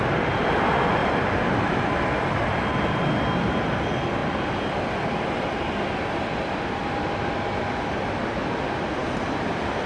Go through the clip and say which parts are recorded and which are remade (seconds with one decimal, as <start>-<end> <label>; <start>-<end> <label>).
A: 0.0-1.0 recorded; 1.0-1.9 remade; 1.9-9.9 recorded

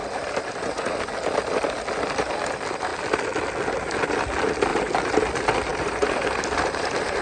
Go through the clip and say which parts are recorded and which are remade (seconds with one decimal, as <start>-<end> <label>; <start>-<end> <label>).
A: 0.0-1.0 remade; 1.0-4.7 recorded; 4.7-5.2 remade; 5.2-5.7 recorded; 5.7-7.2 remade

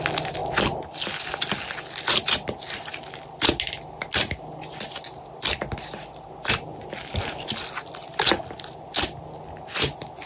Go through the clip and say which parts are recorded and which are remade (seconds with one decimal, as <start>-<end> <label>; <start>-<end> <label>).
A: 0.0-10.3 recorded

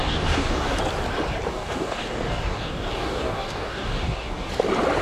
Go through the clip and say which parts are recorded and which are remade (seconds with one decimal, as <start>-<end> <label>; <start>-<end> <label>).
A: 0.0-0.8 remade; 0.8-1.5 recorded; 1.5-4.5 remade; 4.5-5.0 recorded

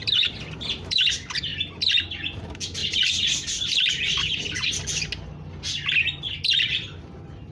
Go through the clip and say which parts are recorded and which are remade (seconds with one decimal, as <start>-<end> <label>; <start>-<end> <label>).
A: 0.0-7.5 recorded

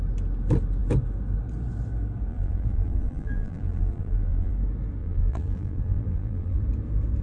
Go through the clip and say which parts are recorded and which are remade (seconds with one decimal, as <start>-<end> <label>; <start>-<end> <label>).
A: 0.0-2.3 recorded; 2.3-4.5 remade; 4.5-5.0 recorded; 5.0-6.6 remade; 6.6-7.2 recorded